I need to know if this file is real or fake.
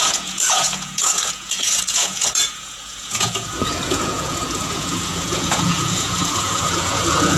fake